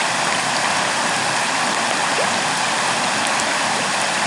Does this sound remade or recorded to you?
recorded